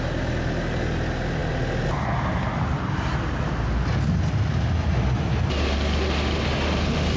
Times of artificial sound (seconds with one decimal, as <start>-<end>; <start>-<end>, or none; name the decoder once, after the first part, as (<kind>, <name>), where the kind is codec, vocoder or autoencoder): none